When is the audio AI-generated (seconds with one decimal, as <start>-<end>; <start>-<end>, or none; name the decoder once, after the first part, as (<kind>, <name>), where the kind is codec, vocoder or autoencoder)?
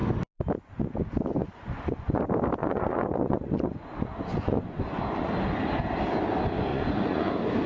1.4-2.2 (vocoder, Vocos); 2.6-5.3; 6.7-7.3